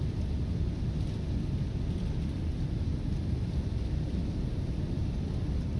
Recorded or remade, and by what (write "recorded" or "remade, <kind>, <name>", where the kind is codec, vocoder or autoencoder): recorded